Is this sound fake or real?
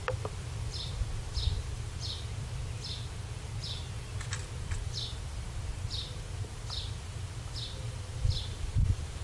fake